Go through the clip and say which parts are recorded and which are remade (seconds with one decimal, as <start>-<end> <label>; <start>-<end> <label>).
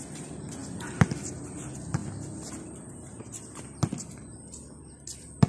0.0-5.5 recorded